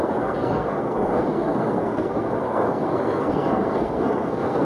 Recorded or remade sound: remade